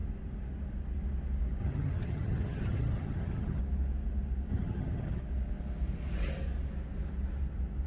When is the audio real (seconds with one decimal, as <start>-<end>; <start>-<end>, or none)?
0.0-1.6; 3.6-4.5; 5.2-7.9